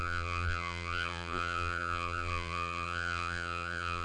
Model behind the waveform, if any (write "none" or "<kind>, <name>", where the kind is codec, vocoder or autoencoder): vocoder, BigVGAN v2